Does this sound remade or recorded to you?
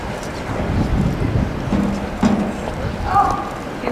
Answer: recorded